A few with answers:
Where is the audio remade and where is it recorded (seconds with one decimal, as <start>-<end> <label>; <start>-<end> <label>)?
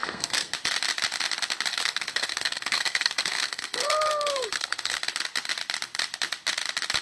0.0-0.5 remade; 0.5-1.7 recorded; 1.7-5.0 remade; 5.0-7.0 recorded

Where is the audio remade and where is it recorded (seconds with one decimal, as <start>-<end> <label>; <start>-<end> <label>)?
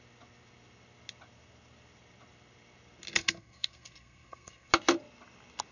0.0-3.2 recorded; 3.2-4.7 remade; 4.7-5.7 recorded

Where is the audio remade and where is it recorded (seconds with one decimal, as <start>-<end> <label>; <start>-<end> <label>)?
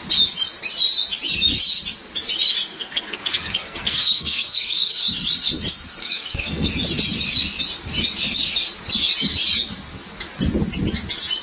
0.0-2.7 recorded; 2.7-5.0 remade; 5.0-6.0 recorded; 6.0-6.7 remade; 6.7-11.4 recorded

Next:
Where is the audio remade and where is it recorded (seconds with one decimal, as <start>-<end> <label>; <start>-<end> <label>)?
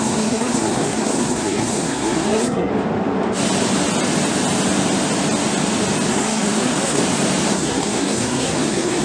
0.0-2.7 remade; 2.7-6.1 recorded; 6.1-7.0 remade; 7.0-7.5 recorded; 7.5-9.0 remade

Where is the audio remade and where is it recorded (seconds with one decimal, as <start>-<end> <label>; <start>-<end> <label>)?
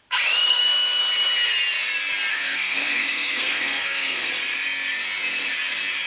0.0-0.5 recorded; 0.5-1.0 remade; 1.0-2.3 recorded; 2.3-4.3 remade; 4.3-6.1 recorded